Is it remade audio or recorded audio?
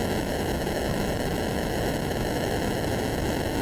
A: remade